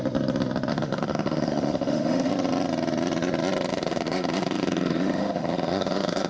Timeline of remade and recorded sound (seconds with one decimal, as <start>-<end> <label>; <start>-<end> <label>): 0.0-0.7 recorded; 0.7-2.3 remade; 2.3-3.7 recorded; 3.7-6.3 remade